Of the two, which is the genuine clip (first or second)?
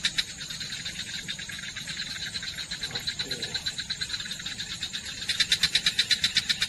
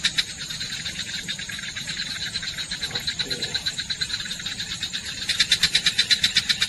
first